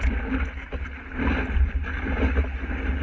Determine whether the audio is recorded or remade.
recorded